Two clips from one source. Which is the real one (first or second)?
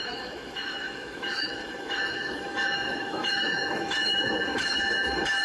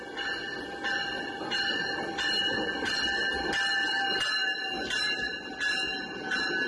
second